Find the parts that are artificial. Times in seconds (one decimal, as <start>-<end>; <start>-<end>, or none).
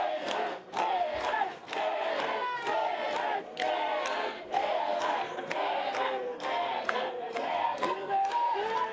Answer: 0.0-2.9; 3.4-8.9